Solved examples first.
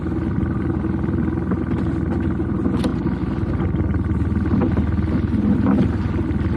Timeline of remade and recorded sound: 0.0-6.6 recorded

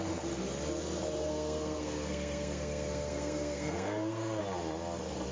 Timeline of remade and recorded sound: 0.0-1.2 recorded; 1.2-4.4 remade; 4.4-5.3 recorded

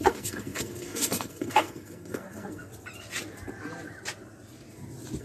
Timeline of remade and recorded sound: 0.0-2.7 remade; 2.7-5.2 recorded

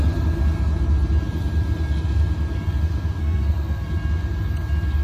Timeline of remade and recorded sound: 0.0-3.2 recorded; 3.2-3.9 remade; 3.9-5.0 recorded

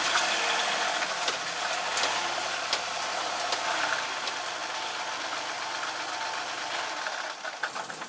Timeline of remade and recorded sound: 0.0-8.1 recorded

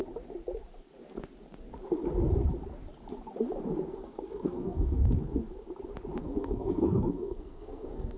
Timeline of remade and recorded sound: 0.0-3.9 recorded; 3.9-5.3 remade; 5.3-6.2 recorded; 6.2-8.2 remade